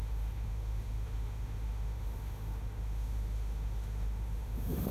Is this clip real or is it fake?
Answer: fake